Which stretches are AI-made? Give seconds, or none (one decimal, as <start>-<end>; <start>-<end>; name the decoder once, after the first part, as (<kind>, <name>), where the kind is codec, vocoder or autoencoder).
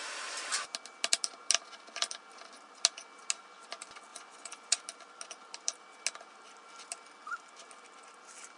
4.1-4.8 (vocoder, Vocos)